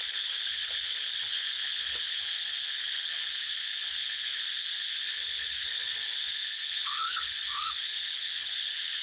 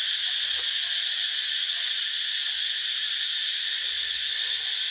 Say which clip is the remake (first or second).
first